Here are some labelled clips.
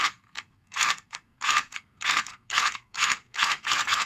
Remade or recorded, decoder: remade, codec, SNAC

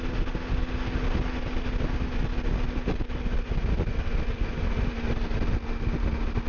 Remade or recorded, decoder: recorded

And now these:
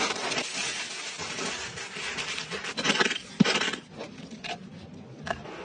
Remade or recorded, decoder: recorded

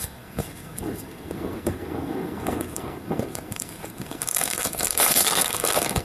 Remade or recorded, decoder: remade, codec, SNAC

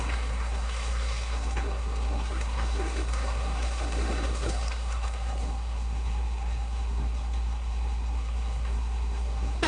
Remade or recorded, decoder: remade, codec, SNAC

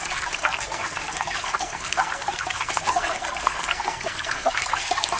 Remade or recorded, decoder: remade, codec, SNAC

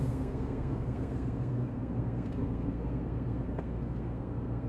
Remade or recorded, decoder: remade, codec, SNAC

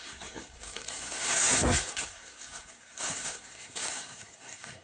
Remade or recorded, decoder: remade, codec, SNAC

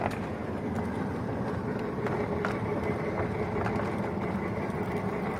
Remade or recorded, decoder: recorded